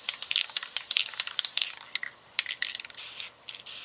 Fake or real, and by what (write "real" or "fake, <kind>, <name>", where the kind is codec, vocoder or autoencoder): real